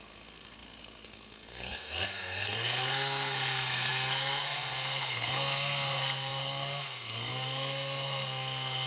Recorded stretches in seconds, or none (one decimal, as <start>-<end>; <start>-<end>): none